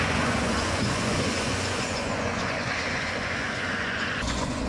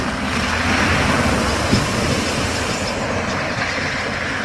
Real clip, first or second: second